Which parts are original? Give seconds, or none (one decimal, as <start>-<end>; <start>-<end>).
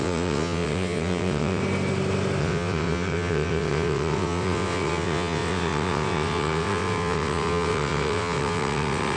1.6-2.4